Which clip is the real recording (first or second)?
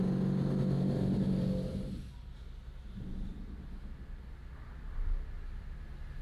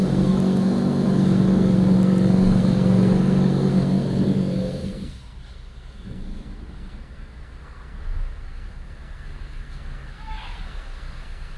first